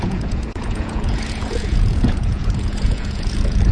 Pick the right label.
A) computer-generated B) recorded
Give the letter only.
A